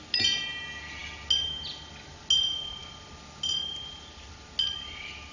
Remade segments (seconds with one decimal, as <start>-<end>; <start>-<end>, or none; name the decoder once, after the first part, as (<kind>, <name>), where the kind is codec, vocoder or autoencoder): none